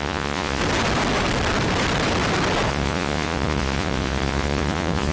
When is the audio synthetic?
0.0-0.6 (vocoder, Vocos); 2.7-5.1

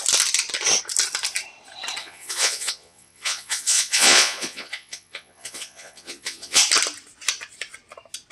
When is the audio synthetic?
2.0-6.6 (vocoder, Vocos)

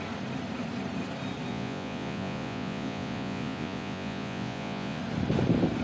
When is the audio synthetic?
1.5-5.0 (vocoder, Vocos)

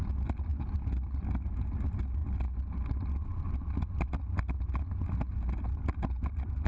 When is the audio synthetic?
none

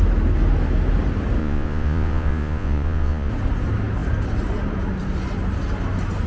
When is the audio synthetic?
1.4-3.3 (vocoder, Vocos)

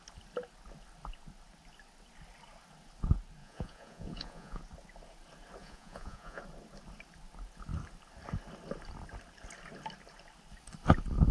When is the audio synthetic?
3.4-4.6 (vocoder, Vocos); 5.6-6.4

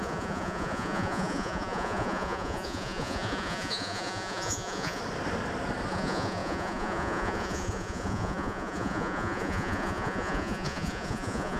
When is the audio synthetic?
0.0-5.0 (vocoder, Vocos); 5.9-11.6

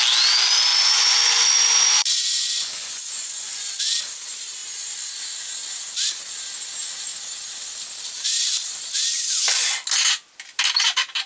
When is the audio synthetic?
0.7-3.8 (vocoder, Vocos)